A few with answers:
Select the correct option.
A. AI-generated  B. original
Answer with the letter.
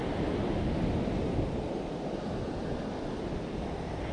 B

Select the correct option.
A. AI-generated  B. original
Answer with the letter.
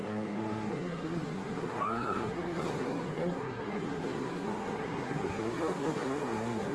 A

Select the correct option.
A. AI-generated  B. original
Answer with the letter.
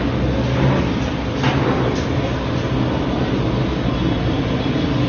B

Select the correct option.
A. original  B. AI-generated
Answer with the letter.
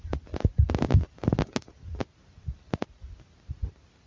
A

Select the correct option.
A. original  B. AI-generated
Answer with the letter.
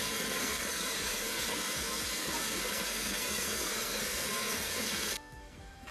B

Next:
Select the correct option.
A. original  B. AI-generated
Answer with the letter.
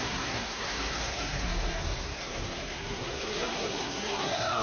B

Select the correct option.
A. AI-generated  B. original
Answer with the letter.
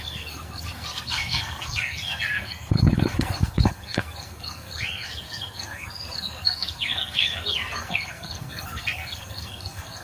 A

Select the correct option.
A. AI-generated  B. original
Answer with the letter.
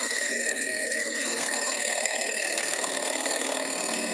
A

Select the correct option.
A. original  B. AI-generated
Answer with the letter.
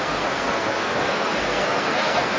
B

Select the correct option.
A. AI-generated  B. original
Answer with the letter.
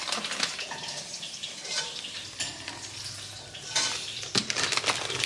B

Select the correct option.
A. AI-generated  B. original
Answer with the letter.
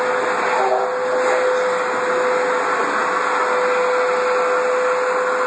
B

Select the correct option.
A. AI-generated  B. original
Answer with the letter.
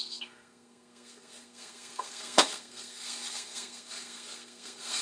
A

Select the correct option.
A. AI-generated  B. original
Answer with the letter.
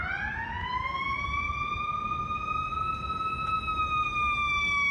B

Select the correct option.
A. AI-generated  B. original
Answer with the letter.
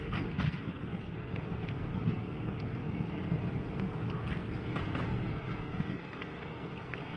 A